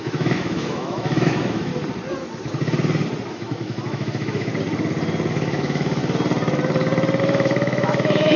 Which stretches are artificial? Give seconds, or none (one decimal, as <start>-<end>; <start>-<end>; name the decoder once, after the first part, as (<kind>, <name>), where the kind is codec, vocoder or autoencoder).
0.0-1.7 (autoencoder, DAC-VAE); 3.3-4.5; 5.3-6.0; 7.2-8.4